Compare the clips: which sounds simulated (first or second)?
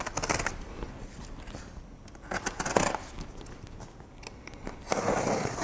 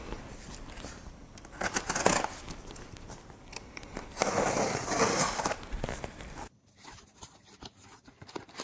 second